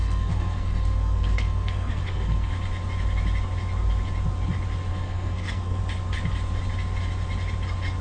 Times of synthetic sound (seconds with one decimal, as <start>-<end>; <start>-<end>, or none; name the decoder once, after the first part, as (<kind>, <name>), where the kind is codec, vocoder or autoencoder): 0.0-2.5 (codec, SNAC); 4.9-5.8